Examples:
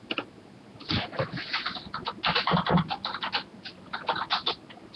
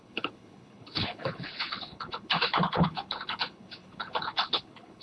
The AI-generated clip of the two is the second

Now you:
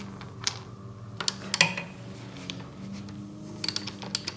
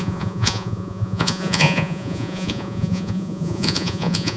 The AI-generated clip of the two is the second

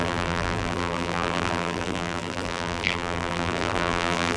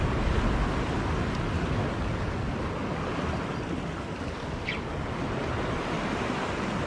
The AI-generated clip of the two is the first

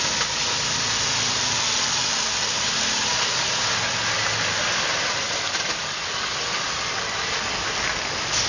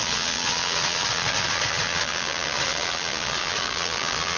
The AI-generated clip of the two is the second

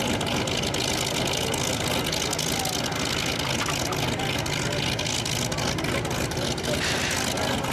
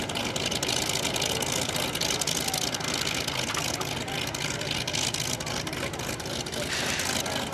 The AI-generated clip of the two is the second